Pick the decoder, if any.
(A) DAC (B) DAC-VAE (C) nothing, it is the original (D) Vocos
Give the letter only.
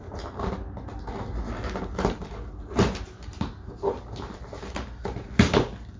C